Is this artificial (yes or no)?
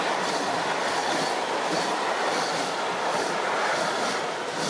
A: no